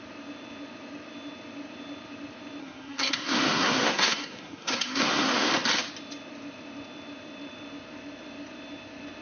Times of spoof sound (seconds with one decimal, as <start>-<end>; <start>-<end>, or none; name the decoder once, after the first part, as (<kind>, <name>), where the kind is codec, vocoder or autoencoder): 2.6-5.5 (codec, SNAC)